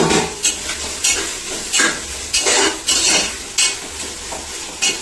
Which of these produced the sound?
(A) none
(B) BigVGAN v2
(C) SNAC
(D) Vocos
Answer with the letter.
A